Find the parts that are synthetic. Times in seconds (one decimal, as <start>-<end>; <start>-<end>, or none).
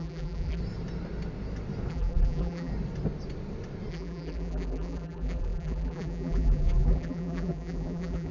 0.0-0.6; 1.9-2.7; 3.9-8.3